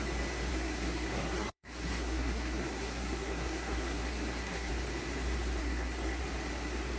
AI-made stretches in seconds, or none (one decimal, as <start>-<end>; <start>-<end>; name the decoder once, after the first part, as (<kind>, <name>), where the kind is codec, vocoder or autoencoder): 0.5-4.7 (codec, SNAC); 5.6-6.2